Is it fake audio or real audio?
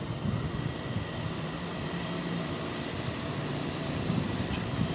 fake